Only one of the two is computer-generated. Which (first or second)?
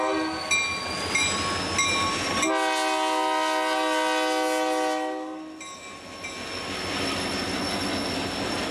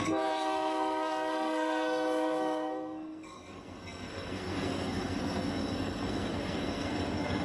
second